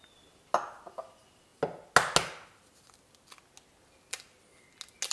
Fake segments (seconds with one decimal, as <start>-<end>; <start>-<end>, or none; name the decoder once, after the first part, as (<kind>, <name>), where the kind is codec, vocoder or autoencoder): none